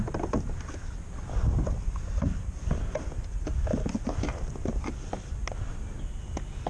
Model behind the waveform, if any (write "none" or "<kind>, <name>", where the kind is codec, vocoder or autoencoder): none